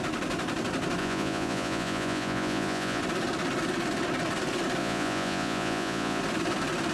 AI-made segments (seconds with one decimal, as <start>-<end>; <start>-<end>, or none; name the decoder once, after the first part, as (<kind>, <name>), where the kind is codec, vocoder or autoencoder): 1.0-3.0 (vocoder, Vocos); 4.8-6.2